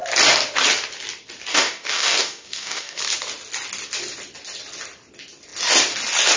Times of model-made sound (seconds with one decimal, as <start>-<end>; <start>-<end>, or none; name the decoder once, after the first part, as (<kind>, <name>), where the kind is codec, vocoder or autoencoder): 1.5-3.0 (codec, DAC)